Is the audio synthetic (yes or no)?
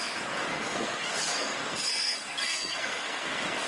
yes